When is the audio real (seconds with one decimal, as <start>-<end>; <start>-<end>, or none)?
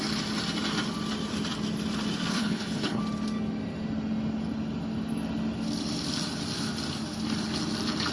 0.0-2.3; 3.0-8.1